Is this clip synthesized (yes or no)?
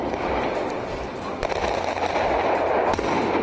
no